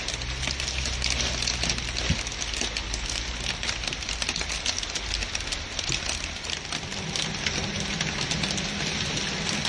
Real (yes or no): yes